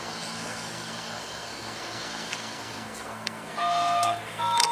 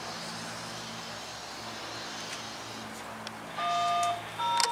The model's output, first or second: first